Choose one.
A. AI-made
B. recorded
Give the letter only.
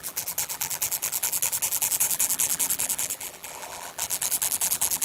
A